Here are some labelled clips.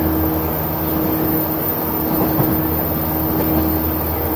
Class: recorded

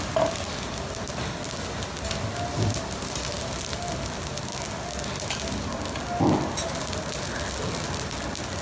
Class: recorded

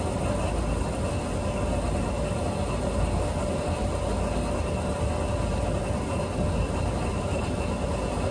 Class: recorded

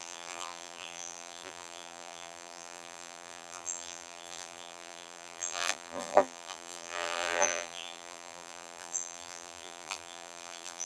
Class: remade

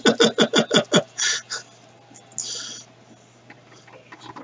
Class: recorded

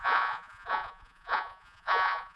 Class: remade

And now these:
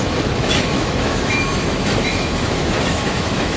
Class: remade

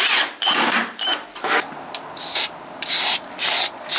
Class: recorded